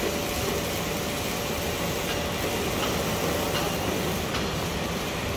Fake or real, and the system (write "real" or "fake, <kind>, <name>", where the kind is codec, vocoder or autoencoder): real